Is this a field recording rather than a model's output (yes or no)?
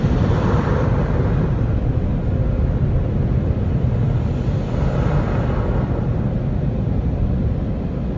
yes